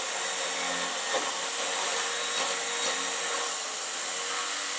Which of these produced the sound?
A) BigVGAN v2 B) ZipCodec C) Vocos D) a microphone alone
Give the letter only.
D